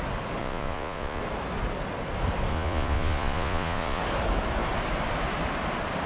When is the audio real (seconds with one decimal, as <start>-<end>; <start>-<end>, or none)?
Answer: 0.0-0.4; 1.2-2.5; 4.0-6.1